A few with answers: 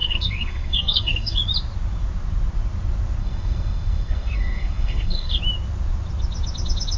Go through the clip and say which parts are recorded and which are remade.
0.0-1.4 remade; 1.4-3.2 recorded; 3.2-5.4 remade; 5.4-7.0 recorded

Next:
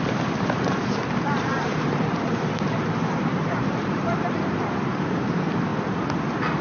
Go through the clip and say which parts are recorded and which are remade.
0.0-5.7 remade; 5.7-6.6 recorded